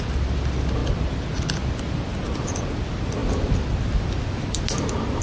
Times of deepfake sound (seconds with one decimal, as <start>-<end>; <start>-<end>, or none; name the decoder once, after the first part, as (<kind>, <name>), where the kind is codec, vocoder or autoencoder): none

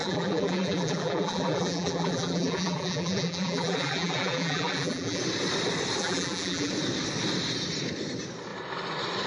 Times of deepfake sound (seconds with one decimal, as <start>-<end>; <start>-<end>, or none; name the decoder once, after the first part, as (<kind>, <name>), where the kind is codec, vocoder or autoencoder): 0.0-5.2 (vocoder, BigVGAN v2); 6.0-6.7

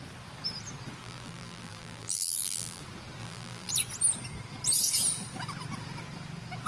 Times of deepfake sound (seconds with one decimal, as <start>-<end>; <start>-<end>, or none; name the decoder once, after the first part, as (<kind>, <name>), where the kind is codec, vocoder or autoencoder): 1.0-2.8 (vocoder, BigVGAN v2); 3.2-3.7

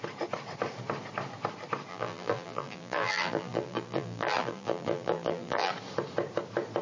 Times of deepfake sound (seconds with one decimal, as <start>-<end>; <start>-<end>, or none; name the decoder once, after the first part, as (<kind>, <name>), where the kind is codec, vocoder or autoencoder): 1.9-5.7 (vocoder, BigVGAN v2)

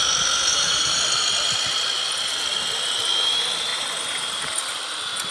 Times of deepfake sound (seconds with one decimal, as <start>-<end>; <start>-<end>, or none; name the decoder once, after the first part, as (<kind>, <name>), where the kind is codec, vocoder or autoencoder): 0.5-1.0 (vocoder, BigVGAN v2); 3.7-4.4